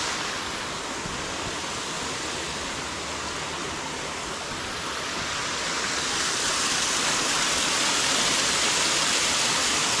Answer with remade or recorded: recorded